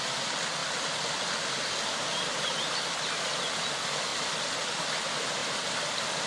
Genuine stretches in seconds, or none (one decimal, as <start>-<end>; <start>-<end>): 0.0-5.4